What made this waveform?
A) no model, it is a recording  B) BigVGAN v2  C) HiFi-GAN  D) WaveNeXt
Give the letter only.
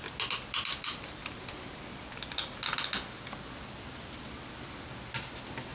A